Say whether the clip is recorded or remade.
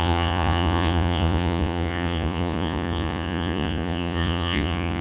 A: remade